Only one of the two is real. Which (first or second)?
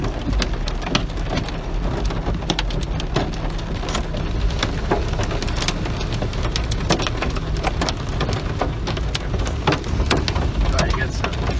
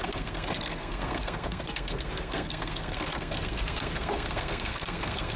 first